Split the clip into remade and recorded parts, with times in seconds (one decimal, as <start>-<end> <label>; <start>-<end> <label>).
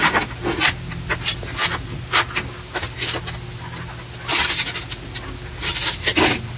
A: 0.0-6.6 recorded